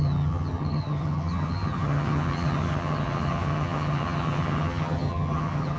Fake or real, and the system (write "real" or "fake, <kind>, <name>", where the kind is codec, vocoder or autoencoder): fake, vocoder, HiFi-GAN